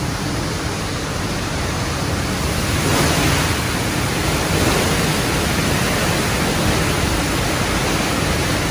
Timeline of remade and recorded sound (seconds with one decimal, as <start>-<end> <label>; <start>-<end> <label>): 0.0-8.7 recorded